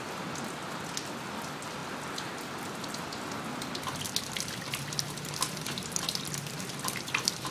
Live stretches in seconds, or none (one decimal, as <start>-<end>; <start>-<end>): 0.0-7.5